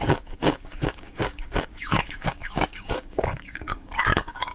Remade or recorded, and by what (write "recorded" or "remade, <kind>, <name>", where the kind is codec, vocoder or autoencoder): remade, codec, DAC